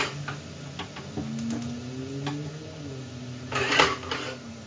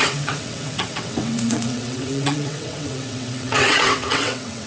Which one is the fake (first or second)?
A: second